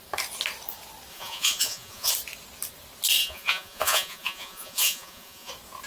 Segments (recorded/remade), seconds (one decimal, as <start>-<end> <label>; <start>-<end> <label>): 0.0-1.1 recorded; 1.1-2.1 remade; 2.1-3.2 recorded; 3.2-5.5 remade; 5.5-5.9 recorded